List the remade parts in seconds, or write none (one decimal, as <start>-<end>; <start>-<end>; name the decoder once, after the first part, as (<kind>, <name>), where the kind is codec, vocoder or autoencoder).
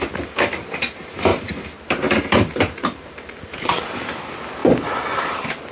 1.3-3.4 (vocoder, BigVGAN v2)